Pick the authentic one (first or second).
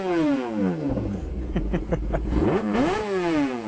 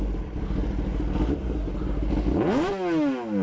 second